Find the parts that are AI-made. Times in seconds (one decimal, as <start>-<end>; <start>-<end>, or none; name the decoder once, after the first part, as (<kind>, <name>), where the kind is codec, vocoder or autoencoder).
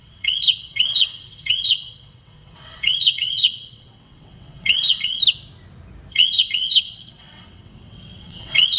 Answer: 0.0-5.2 (vocoder, WaveNeXt); 6.1-8.8